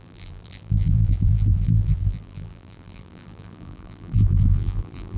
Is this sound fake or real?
fake